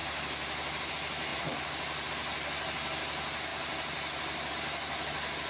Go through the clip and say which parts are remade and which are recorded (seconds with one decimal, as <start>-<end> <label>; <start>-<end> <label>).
0.0-1.3 recorded; 1.3-2.1 remade; 2.1-5.5 recorded